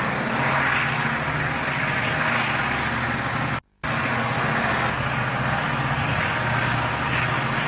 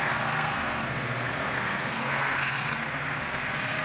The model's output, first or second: second